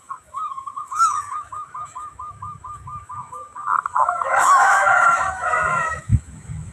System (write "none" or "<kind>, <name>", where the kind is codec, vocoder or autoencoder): autoencoder, DAC-VAE